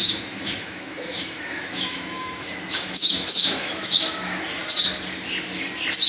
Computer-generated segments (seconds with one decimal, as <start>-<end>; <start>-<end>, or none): 0.0-4.6